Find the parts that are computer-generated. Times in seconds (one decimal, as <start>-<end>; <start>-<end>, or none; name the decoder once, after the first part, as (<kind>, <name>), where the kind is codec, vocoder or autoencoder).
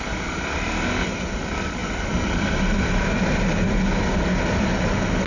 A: none